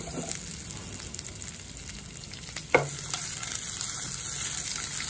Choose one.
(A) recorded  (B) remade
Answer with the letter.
A